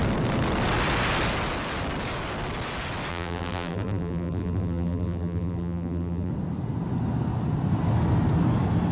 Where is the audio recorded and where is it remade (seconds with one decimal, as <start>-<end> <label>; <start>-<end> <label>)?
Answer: 0.0-3.1 recorded; 3.1-6.3 remade; 6.3-8.9 recorded